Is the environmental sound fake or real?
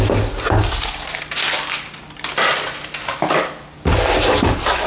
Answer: real